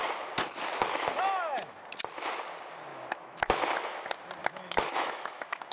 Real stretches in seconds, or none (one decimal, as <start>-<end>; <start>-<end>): 0.0-2.9; 3.4-4.4